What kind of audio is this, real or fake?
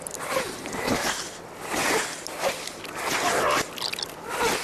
real